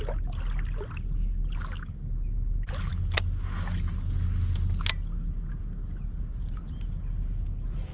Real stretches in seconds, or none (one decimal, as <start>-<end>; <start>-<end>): 0.0-7.9